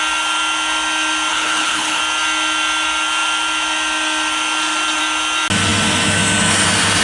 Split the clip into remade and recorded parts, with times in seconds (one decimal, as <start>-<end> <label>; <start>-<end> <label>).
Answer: 0.0-1.3 recorded; 1.3-2.0 remade; 2.0-7.0 recorded